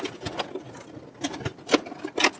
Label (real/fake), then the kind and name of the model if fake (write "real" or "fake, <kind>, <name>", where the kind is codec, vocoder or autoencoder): real